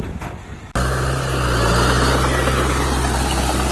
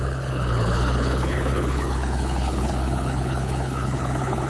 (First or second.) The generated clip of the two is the second